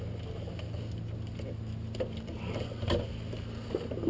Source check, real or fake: real